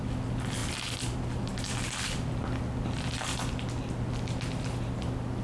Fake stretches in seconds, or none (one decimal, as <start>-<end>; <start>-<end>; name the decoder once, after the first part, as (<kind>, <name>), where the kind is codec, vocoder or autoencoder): none